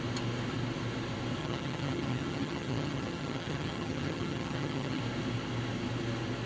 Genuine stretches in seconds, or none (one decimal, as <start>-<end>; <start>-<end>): 0.0-1.4; 5.0-6.5